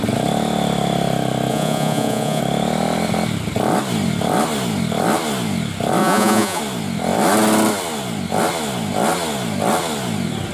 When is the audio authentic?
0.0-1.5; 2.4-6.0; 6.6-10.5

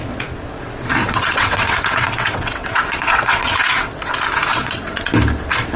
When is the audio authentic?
0.0-1.0; 3.9-4.5; 5.1-5.8